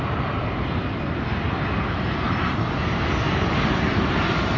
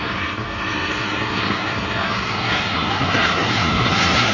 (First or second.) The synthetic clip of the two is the second